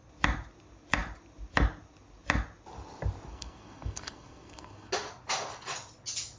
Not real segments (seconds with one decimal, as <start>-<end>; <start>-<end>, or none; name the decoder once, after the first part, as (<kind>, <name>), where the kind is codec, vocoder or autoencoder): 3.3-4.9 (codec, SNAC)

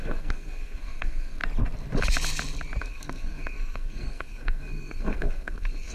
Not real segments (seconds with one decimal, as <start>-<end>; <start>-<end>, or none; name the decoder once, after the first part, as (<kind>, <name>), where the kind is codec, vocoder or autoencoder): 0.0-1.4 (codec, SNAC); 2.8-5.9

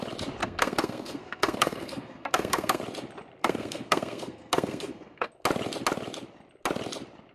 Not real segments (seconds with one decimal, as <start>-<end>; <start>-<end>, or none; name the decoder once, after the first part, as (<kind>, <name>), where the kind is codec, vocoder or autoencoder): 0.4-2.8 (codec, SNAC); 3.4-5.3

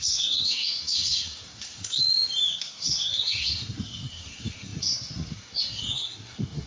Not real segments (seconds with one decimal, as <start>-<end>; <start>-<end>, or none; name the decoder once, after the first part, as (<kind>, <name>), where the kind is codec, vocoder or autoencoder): 0.0-2.0 (codec, SNAC); 2.5-6.7

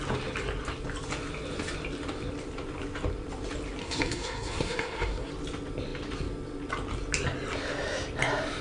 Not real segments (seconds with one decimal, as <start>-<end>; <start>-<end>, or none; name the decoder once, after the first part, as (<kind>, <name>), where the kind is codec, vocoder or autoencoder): 3.8-5.3 (codec, SNAC)

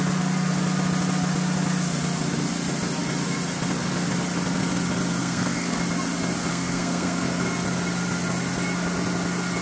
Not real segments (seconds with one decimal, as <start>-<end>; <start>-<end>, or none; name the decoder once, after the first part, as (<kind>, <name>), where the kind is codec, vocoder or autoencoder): 5.2-5.8 (codec, SNAC); 6.5-7.4

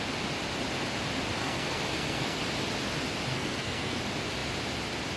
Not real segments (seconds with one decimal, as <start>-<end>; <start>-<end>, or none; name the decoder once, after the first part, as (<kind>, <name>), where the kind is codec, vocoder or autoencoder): 1.4-2.4 (codec, SNAC); 3.3-4.0